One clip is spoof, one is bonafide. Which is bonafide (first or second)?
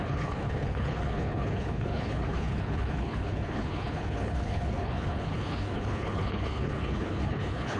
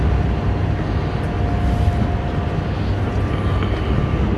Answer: second